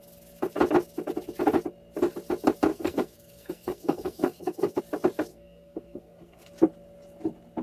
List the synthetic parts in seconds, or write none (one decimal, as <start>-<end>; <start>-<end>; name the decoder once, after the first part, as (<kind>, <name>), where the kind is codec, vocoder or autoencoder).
2.7-4.8 (codec, SNAC); 5.3-6.5